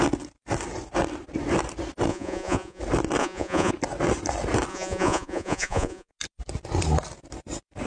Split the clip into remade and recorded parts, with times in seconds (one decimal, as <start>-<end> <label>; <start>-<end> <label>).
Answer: 0.0-2.1 recorded; 2.1-2.8 remade; 2.8-3.2 recorded; 3.2-3.7 remade; 3.7-4.7 recorded; 4.7-6.1 remade; 6.1-7.9 recorded